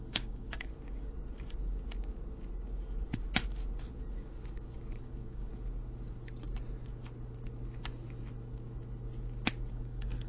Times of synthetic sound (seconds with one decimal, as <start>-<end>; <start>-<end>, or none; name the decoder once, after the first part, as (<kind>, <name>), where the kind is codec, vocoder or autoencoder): 0.0-0.7 (codec, DAC); 5.0-5.5; 9.7-10.3